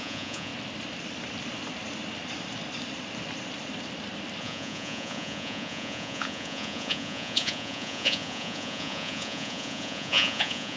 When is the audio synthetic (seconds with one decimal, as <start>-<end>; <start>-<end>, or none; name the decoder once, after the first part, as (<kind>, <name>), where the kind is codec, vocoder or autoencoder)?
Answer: 0.0-0.5 (vocoder, Vocos); 4.4-10.8